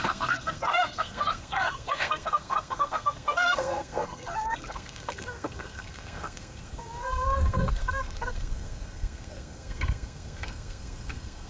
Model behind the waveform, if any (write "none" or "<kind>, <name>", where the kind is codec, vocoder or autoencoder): codec, SNAC